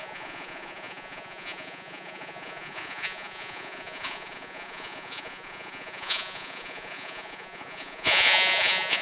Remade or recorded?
remade